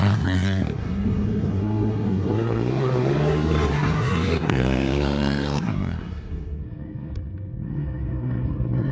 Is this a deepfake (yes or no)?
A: yes